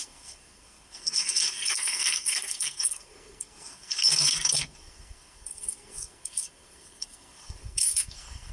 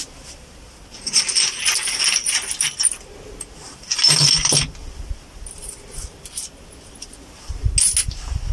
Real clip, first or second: second